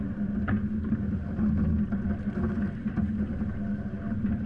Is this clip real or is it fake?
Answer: real